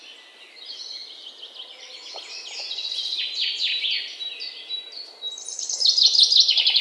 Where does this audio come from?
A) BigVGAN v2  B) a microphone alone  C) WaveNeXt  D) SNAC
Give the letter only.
B